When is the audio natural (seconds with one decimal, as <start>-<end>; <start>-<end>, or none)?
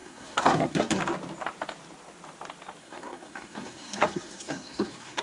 1.0-2.8